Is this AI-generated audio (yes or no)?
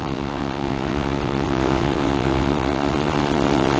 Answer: yes